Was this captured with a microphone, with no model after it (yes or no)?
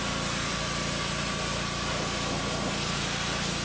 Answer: yes